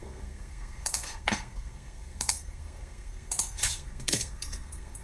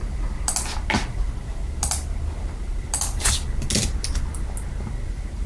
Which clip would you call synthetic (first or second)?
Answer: first